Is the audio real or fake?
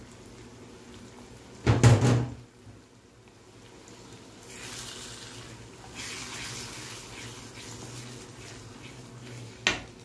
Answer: real